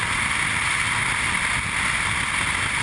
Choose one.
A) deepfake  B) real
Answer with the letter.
B